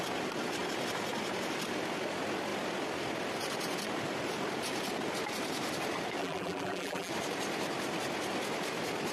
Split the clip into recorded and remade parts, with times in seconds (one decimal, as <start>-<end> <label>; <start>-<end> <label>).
0.0-6.2 recorded; 6.2-7.1 remade; 7.1-9.1 recorded